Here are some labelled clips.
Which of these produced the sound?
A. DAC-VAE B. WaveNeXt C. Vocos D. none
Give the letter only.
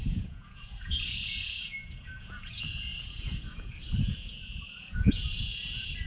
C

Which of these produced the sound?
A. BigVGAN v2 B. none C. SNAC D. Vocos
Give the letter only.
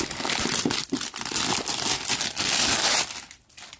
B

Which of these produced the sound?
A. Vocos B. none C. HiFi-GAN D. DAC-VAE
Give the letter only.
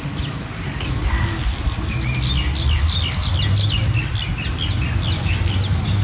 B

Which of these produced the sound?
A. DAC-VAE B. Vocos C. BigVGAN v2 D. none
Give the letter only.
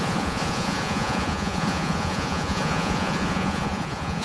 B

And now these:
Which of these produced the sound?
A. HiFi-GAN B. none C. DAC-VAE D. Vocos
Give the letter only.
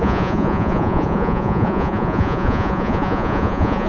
D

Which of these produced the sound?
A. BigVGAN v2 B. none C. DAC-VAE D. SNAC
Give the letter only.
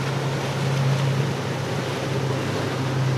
B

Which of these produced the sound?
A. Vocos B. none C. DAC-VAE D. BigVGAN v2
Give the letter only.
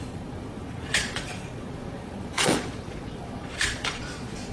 A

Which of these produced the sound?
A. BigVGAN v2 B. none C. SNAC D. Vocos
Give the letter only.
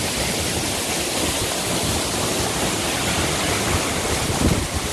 B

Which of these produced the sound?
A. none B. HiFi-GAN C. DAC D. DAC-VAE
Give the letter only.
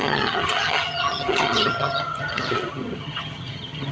B